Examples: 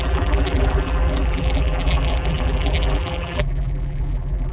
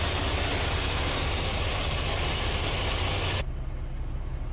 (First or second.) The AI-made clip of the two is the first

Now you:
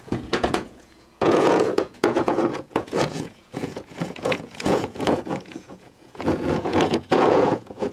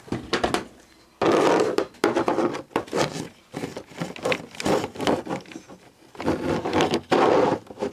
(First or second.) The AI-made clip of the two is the first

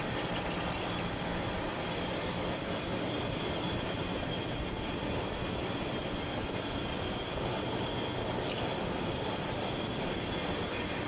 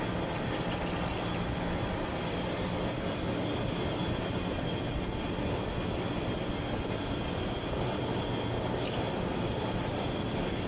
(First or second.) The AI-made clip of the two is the first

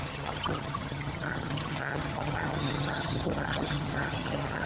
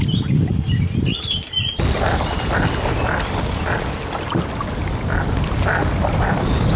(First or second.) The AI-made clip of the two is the first